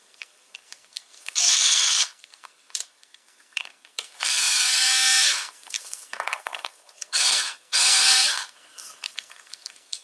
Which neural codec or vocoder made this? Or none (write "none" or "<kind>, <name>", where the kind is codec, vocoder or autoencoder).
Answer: codec, SNAC